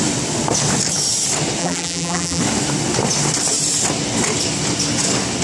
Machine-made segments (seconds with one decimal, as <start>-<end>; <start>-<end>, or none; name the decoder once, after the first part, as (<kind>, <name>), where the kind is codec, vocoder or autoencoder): 1.6-2.4 (vocoder, BigVGAN v2)